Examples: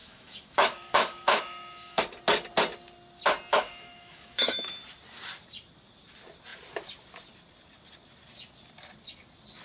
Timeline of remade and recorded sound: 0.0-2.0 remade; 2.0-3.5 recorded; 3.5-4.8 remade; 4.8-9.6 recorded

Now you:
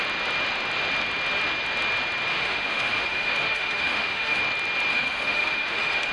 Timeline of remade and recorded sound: 0.0-2.3 recorded; 2.3-4.4 remade; 4.4-4.9 recorded; 4.9-6.1 remade

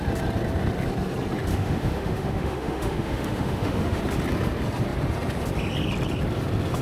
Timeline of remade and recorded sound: 0.0-1.5 recorded; 1.5-4.0 remade; 4.0-6.8 recorded